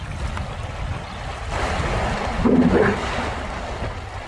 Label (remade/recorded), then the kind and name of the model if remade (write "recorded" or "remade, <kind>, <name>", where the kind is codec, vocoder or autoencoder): recorded